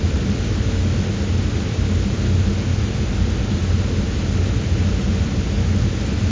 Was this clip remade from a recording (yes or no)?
no